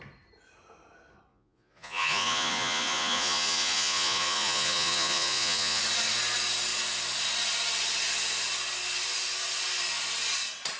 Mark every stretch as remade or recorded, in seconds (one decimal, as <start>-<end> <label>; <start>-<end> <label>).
0.0-1.3 recorded; 1.3-5.8 remade; 5.8-10.8 recorded